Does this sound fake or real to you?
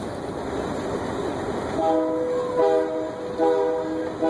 real